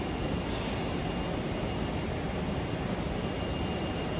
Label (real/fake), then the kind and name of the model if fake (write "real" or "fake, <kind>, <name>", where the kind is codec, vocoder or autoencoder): real